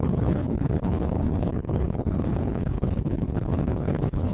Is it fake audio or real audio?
fake